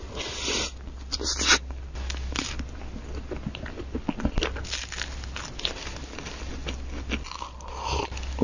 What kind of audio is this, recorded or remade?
recorded